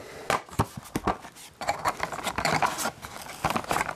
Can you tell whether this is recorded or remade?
recorded